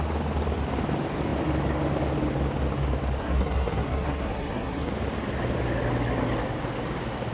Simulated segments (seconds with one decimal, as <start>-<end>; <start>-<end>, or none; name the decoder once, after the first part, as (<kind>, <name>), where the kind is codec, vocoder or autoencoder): 3.2-4.9 (codec, SNAC)